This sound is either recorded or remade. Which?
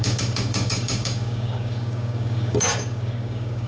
remade